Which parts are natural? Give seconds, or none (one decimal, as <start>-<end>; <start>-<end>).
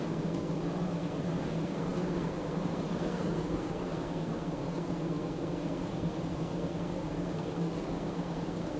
none